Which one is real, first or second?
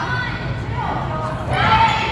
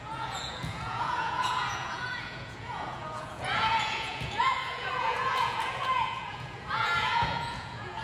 first